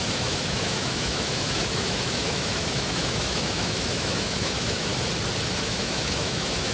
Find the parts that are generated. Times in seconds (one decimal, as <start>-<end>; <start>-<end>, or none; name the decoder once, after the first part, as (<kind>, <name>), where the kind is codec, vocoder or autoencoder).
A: 0.0-4.9 (autoencoder, DAC-VAE); 5.5-6.7